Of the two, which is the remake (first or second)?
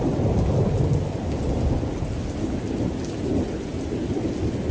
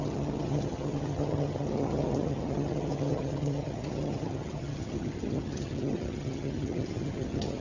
second